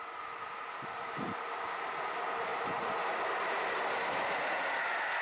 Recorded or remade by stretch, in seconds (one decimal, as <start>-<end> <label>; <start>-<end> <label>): 0.0-2.5 recorded; 2.5-3.9 remade; 3.9-5.2 recorded